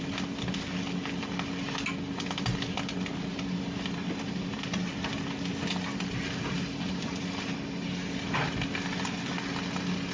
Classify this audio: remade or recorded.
recorded